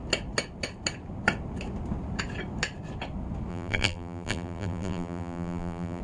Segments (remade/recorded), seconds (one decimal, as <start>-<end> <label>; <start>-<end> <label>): 0.0-3.5 recorded; 3.5-6.0 remade